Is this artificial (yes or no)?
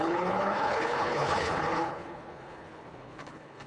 yes